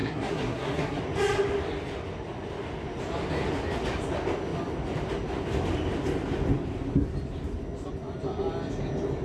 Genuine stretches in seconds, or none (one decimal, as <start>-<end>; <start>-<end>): 1.0-9.2